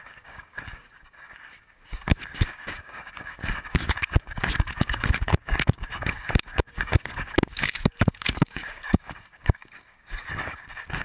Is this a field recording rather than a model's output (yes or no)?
no